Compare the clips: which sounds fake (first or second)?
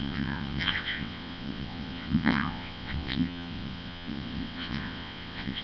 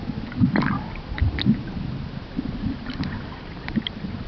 first